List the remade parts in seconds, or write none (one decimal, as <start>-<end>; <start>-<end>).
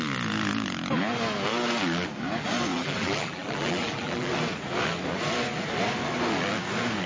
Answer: 2.7-4.3